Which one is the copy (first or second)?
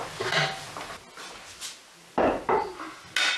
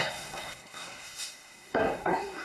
second